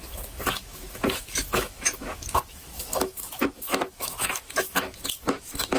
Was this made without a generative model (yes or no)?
no